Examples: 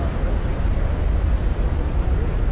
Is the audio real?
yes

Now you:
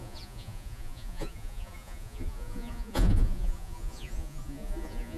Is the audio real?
no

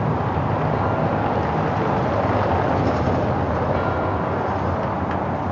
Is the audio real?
yes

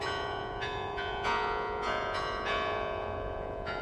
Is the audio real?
no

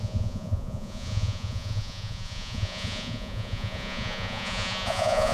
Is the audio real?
no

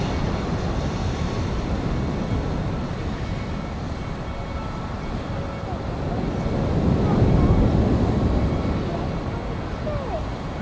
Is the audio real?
yes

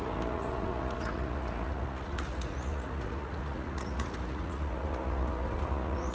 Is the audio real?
no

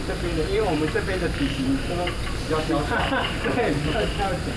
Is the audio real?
yes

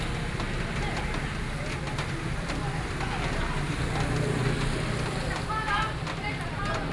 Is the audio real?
yes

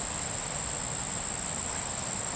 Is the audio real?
yes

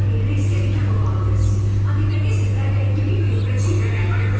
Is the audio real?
yes